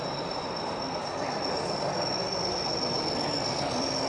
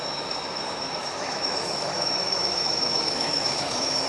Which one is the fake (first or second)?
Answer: second